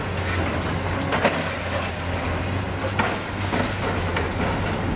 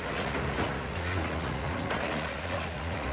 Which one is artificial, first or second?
second